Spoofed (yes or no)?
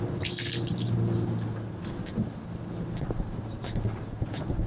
no